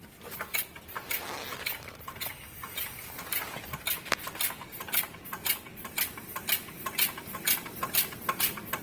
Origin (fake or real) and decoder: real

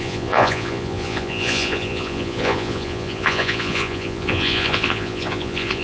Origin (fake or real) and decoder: fake, vocoder, Vocos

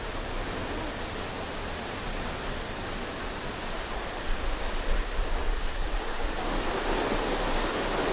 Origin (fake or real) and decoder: real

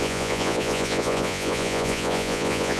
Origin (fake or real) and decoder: fake, vocoder, Vocos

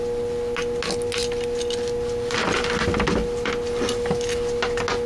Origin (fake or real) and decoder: real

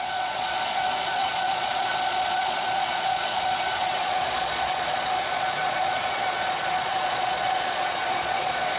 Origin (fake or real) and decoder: fake, vocoder, Vocos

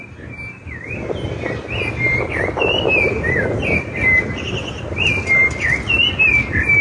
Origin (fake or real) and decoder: real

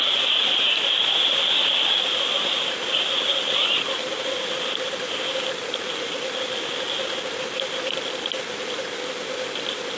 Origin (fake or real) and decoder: real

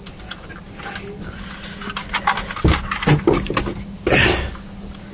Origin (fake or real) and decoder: real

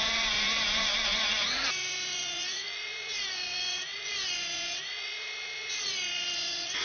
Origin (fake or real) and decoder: fake, vocoder, Vocos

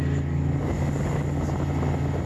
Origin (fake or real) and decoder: real